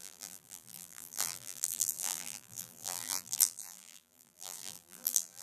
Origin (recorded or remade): remade